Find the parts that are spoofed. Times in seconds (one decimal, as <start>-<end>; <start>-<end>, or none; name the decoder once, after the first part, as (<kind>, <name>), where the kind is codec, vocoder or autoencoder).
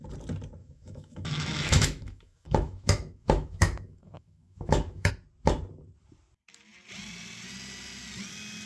0.6-5.1 (autoencoder, DAC-VAE)